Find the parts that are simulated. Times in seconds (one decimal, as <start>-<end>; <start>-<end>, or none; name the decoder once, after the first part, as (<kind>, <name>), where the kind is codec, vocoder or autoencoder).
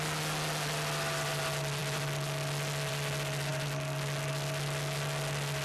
none